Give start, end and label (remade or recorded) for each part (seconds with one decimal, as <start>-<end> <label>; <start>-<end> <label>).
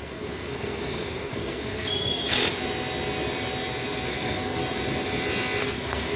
0.0-2.4 remade; 2.4-4.1 recorded; 4.1-4.6 remade; 4.6-5.6 recorded; 5.6-6.2 remade